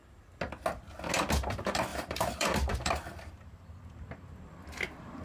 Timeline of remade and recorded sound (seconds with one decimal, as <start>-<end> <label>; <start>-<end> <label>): 0.0-1.9 recorded; 1.9-5.2 remade